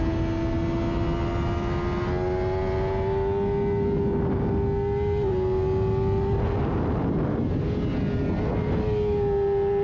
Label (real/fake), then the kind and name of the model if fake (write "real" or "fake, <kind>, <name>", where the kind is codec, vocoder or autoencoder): real